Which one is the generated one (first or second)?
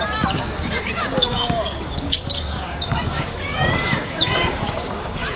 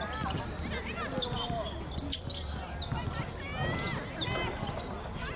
first